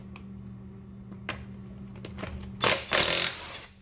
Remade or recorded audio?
recorded